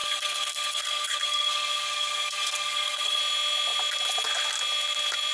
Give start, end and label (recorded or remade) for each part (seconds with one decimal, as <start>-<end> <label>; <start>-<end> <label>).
0.0-3.2 remade; 3.2-5.3 recorded